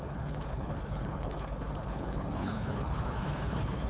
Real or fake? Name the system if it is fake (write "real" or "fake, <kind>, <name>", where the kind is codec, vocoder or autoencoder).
fake, codec, HILCodec